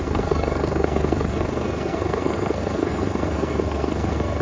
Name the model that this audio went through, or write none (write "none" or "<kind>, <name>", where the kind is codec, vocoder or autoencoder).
codec, SNAC